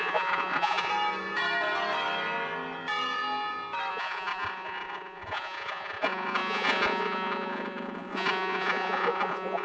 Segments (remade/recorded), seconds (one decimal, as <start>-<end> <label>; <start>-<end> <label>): 0.0-0.9 remade; 0.9-3.9 recorded; 3.9-9.6 remade